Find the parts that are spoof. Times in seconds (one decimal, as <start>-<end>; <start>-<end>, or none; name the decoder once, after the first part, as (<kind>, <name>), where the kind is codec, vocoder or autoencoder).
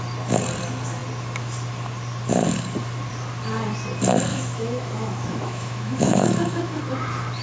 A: 4.3-6.8 (autoencoder, DAC-VAE)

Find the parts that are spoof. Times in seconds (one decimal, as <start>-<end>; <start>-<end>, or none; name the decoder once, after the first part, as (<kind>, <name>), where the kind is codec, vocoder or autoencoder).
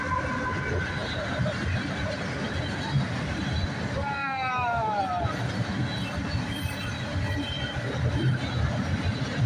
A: 4.2-5.0 (autoencoder, DAC-VAE)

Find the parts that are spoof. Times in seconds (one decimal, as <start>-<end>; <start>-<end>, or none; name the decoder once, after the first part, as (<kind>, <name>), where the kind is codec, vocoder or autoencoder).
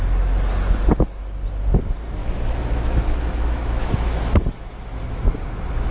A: 2.2-5.9 (autoencoder, DAC-VAE)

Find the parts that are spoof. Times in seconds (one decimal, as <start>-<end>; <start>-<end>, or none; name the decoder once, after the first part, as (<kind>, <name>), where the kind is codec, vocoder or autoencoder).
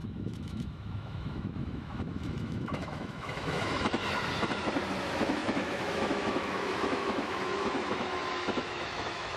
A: 0.0-4.0 (autoencoder, DAC-VAE); 5.0-9.4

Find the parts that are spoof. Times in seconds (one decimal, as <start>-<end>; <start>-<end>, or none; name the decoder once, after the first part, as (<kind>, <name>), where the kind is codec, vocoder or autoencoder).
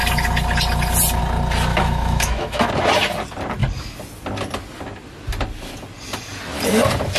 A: 1.7-2.7 (autoencoder, DAC-VAE)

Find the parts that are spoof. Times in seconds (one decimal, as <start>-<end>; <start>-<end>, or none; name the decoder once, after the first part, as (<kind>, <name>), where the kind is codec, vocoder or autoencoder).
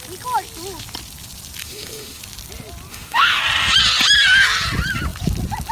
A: 1.6-2.2 (autoencoder, DAC-VAE); 2.9-3.4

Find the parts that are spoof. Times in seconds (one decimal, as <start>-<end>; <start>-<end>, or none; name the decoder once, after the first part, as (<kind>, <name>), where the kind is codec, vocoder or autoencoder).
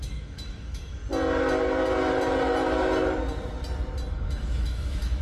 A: 0.0-1.0 (autoencoder, DAC-VAE); 4.1-5.2